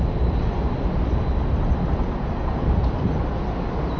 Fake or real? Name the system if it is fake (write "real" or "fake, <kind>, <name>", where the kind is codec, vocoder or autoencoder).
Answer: real